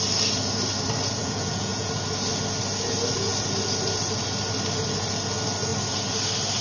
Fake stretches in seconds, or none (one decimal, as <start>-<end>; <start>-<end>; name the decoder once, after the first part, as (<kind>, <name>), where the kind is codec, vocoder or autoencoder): 1.2-1.9 (vocoder, Vocos)